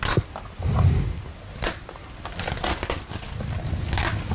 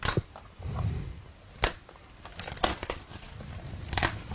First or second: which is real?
first